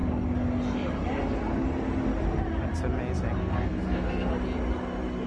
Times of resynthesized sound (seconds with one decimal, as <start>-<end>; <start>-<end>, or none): 3.4-4.3